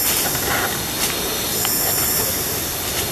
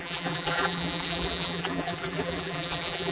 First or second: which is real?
first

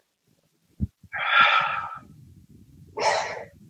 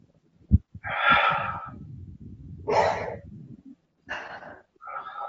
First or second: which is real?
second